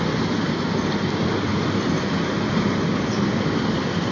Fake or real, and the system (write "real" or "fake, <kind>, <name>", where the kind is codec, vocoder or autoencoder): real